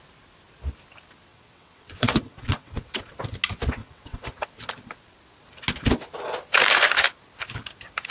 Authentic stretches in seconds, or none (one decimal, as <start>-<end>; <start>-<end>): 0.0-1.3; 3.1-3.8; 4.5-8.1

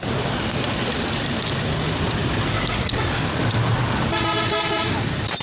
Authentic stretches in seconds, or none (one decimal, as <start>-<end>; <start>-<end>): 0.0-5.4

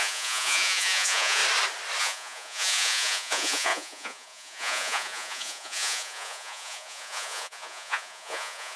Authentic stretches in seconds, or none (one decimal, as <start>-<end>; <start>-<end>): 1.4-2.0

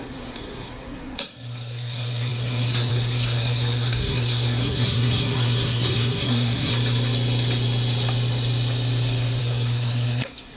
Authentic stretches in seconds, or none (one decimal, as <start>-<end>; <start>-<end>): 6.7-9.4